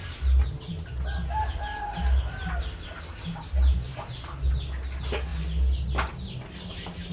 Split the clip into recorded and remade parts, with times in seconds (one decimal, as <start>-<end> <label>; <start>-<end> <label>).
0.0-7.1 recorded